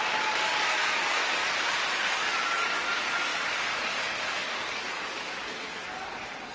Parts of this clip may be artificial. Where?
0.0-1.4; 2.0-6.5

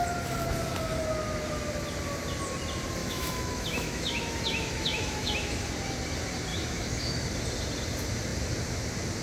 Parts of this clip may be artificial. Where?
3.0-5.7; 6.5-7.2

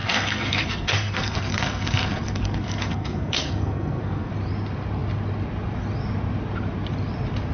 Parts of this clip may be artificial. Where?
0.0-4.3

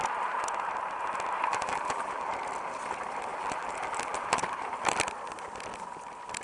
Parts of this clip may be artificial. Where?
1.5-2.3; 3.3-4.4

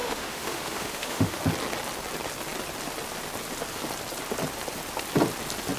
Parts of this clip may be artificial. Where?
0.0-1.4